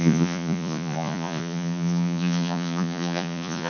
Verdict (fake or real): fake